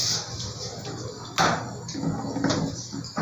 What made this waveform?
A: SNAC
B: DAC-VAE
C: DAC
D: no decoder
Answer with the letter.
D